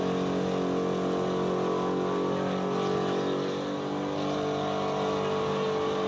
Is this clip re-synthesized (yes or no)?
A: no